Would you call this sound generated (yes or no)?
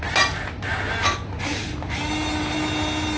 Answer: no